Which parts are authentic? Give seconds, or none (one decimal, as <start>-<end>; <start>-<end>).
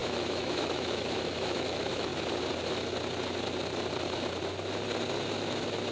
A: 2.1-5.9